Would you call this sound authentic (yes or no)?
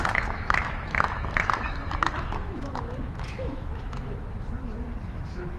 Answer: no